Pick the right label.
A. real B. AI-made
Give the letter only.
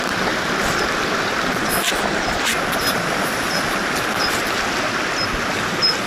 A